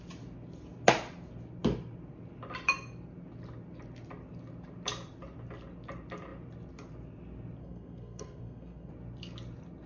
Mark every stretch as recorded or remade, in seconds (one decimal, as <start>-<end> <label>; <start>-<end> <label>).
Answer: 0.0-7.6 recorded; 7.6-8.9 remade; 8.9-9.9 recorded